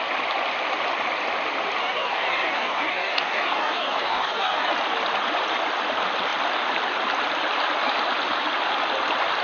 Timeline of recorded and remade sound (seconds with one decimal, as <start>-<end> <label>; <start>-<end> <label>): 0.0-1.8 recorded; 1.8-4.7 remade; 4.7-9.4 recorded